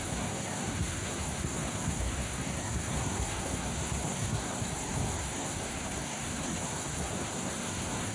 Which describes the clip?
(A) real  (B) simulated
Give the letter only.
B